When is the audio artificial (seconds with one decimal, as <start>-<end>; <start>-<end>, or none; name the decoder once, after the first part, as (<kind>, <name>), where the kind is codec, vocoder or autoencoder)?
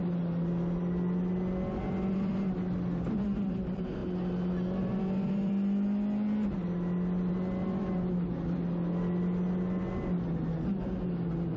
none